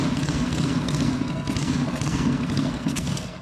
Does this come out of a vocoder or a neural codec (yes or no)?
yes